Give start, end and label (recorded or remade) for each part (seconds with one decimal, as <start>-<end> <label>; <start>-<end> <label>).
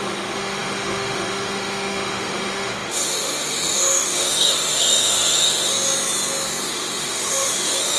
0.0-5.7 remade; 5.7-6.6 recorded; 6.6-8.0 remade